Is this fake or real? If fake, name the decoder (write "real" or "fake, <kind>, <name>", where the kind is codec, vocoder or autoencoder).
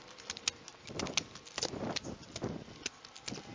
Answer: real